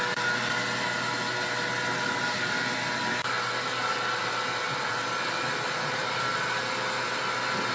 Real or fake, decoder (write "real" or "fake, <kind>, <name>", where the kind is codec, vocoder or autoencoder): real